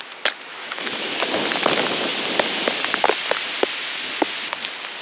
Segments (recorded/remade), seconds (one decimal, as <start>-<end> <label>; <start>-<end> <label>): 0.0-0.5 recorded; 0.5-1.1 remade; 1.1-5.0 recorded